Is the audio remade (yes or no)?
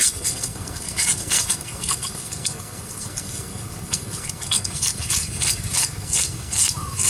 yes